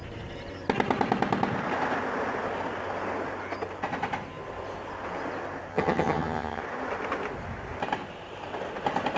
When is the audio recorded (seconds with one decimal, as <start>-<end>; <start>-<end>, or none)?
0.0-5.7; 6.6-9.2